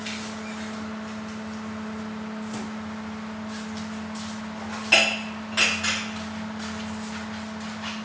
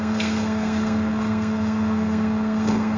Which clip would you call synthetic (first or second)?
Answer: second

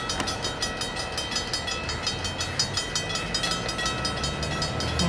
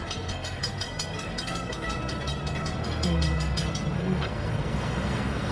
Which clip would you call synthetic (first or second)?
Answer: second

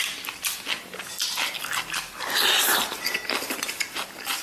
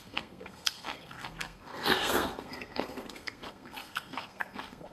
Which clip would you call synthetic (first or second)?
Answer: second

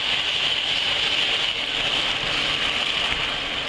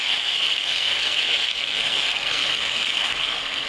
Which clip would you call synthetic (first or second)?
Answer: second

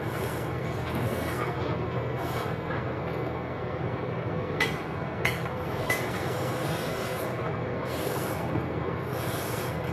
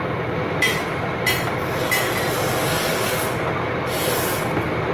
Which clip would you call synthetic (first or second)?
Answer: first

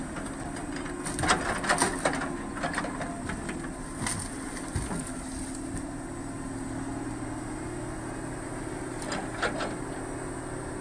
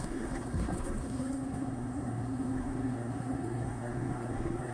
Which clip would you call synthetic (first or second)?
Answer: second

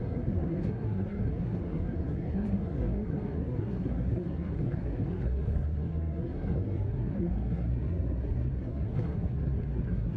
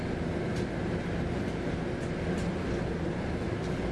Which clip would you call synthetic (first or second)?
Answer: first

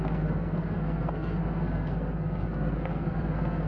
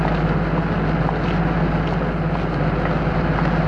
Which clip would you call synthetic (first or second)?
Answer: first